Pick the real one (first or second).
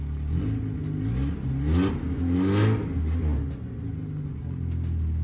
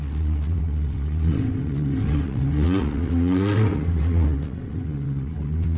first